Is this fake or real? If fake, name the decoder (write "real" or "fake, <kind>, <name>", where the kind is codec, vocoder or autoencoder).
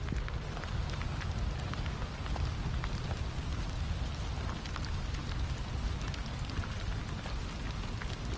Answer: real